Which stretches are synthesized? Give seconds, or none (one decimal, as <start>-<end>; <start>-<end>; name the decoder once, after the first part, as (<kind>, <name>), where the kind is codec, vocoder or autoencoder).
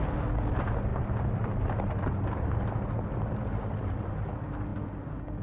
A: none